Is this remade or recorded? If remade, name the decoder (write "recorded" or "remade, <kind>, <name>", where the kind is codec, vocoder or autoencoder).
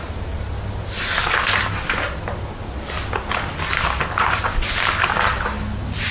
recorded